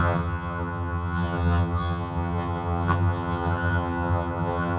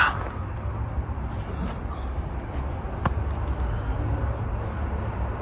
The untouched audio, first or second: second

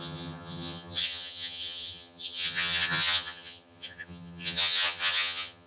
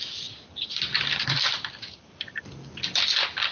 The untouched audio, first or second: second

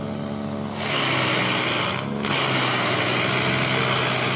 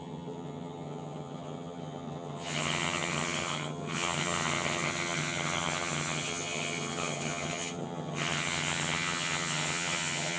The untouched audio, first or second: first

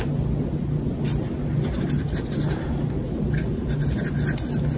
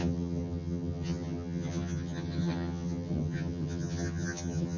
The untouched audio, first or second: first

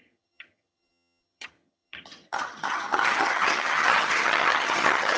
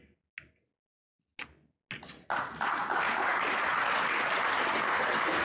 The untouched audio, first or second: second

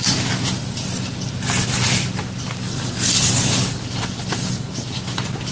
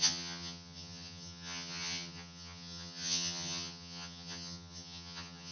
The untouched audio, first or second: first